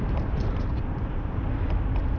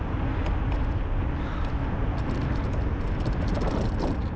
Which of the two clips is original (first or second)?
second